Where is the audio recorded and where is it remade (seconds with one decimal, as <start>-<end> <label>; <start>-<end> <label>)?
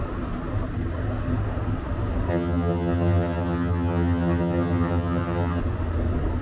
0.0-2.3 recorded; 2.3-5.6 remade; 5.6-6.4 recorded